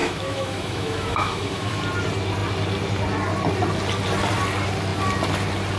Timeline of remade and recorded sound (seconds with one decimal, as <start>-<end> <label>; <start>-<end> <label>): 0.0-1.8 remade; 1.8-5.8 recorded